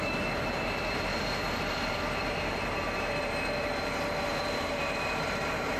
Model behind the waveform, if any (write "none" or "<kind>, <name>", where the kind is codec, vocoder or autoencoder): vocoder, BigVGAN v2